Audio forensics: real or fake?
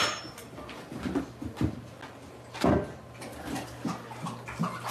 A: real